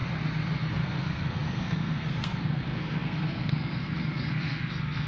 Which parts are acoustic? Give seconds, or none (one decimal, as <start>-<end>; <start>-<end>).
0.0-0.7